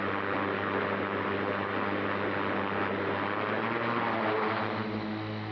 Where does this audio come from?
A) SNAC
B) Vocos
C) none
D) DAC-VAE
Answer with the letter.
C